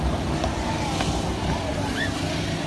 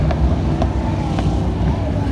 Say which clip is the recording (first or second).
second